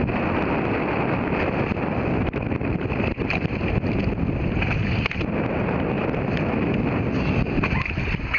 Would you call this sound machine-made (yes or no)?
no